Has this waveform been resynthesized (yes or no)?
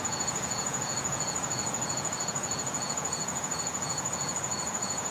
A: yes